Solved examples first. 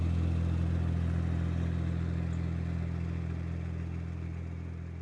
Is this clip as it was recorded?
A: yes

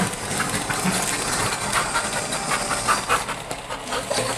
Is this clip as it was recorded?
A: yes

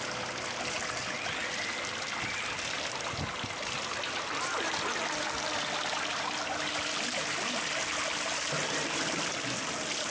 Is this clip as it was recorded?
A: yes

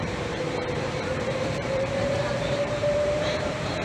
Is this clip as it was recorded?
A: no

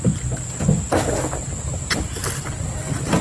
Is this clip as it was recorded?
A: yes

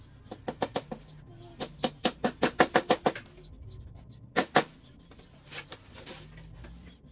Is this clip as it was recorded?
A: yes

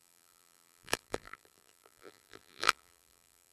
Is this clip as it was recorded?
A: no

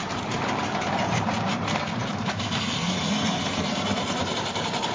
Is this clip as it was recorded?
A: no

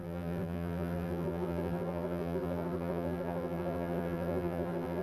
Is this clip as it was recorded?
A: no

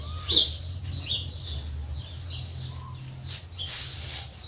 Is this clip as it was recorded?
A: yes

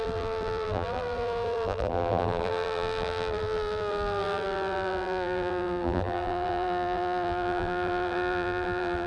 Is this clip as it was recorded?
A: no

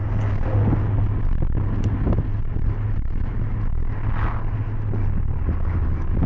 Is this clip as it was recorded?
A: yes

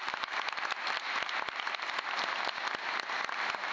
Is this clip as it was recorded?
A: yes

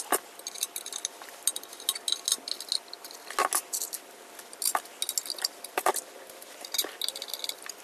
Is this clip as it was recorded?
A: yes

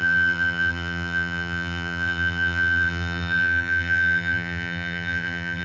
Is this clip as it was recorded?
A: no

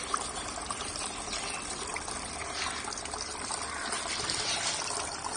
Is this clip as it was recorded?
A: yes